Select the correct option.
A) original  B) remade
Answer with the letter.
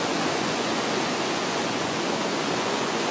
B